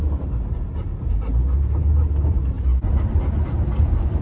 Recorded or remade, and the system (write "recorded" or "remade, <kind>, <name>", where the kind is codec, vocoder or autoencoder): recorded